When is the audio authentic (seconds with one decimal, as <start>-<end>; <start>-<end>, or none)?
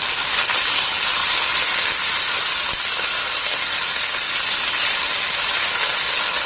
0.0-6.5